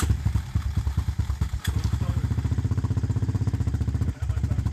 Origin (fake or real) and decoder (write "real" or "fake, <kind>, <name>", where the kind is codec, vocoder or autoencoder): fake, vocoder, BigVGAN v2